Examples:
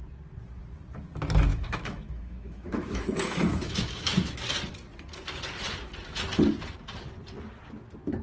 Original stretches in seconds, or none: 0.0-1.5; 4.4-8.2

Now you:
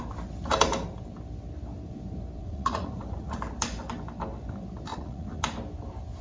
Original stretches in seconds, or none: 0.0-2.4; 3.4-4.9; 5.4-6.2

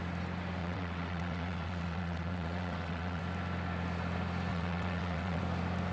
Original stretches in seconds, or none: 0.0-0.6; 3.2-4.5; 5.4-5.9

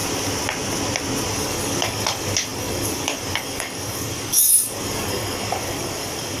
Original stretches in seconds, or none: 0.0-1.3